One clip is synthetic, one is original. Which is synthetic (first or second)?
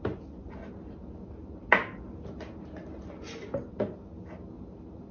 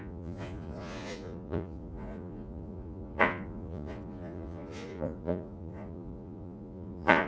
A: second